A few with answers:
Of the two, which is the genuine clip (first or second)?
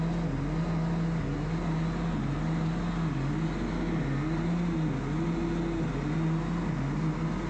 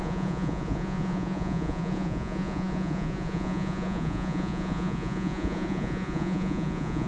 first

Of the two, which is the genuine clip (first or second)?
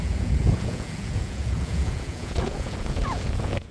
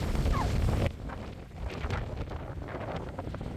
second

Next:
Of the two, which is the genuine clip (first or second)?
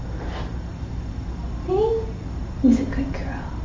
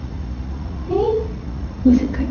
first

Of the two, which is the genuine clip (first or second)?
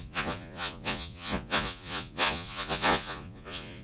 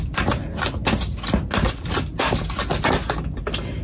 second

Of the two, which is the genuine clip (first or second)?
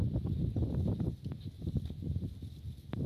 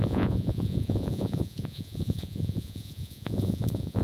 first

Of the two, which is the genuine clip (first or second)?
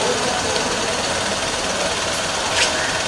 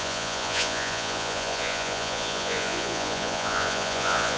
first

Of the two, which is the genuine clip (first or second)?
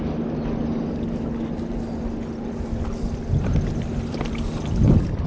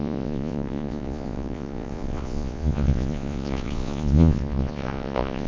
first